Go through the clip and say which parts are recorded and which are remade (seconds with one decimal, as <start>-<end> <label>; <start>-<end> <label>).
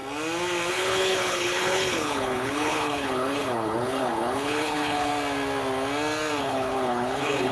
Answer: 0.0-0.7 recorded; 0.7-5.1 remade; 5.1-6.4 recorded; 6.4-7.5 remade